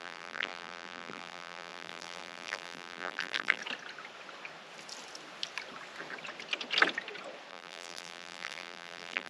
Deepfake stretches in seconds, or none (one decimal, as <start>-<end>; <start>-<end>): 0.0-3.6; 7.5-9.3